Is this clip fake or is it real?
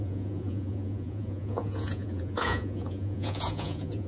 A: fake